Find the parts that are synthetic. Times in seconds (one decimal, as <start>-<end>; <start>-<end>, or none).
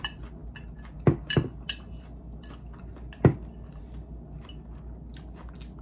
none